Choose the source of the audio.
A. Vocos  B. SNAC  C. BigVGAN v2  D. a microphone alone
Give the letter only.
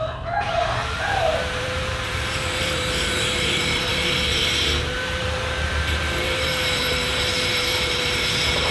C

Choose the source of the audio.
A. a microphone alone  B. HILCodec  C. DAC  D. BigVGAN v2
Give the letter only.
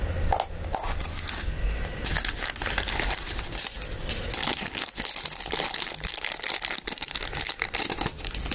A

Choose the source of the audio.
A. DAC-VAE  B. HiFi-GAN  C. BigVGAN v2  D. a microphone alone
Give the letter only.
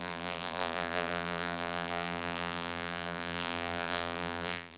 C